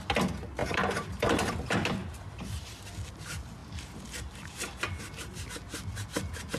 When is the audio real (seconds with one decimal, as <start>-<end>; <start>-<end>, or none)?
0.0-0.6; 1.5-2.0; 2.9-3.6; 4.9-6.6